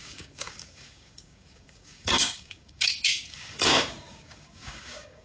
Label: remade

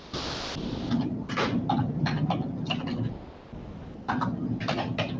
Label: recorded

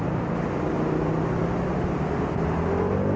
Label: recorded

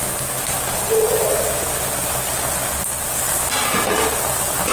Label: recorded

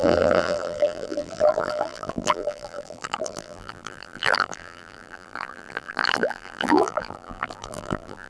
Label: remade